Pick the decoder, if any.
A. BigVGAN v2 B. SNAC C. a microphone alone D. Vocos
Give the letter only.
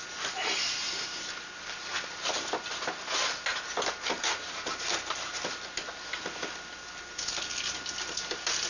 C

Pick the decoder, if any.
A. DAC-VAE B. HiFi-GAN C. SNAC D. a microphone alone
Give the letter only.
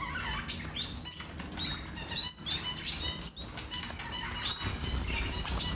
D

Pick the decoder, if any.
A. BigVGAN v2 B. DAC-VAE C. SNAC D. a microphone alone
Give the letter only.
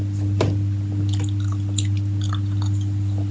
D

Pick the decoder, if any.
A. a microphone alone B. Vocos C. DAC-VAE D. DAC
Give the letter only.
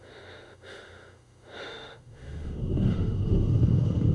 C